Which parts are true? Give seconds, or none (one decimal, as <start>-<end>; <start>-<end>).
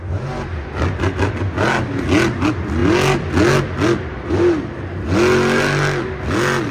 0.0-6.7